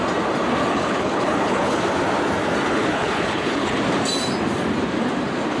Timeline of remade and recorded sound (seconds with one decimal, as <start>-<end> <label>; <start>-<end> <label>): 0.0-0.7 recorded; 0.7-1.8 remade; 1.8-2.7 recorded; 2.7-3.8 remade; 3.8-5.6 recorded